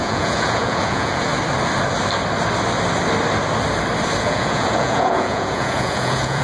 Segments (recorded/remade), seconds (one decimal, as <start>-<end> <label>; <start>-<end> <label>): 0.0-1.3 remade; 1.3-4.2 recorded; 4.2-6.4 remade